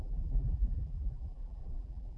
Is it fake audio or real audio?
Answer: fake